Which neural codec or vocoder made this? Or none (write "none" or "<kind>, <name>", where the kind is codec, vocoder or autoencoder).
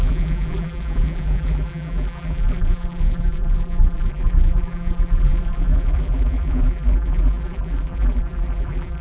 vocoder, BigVGAN v2